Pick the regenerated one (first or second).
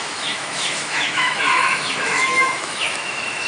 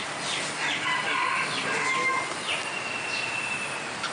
first